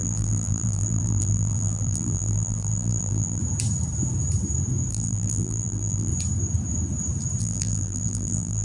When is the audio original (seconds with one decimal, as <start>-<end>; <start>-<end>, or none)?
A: 3.4-4.9; 6.1-7.4